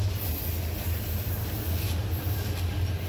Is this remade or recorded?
recorded